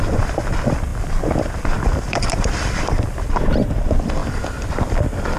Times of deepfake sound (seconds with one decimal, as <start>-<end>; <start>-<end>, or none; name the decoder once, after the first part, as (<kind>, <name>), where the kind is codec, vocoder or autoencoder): 0.9-2.9 (vocoder, BigVGAN v2); 4.2-4.9